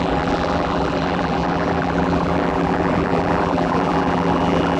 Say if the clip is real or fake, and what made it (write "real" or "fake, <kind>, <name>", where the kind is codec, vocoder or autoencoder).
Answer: fake, vocoder, BigVGAN v2